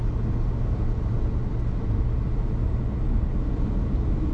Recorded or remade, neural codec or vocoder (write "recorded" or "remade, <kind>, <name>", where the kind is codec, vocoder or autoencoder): recorded